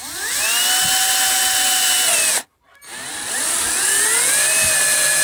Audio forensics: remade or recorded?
recorded